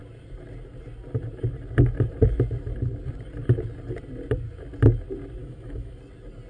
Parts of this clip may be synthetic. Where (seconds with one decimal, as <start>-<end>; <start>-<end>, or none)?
5.4-6.0